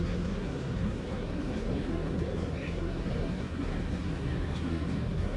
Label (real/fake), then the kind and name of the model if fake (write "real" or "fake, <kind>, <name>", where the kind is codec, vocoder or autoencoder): fake, codec, SNAC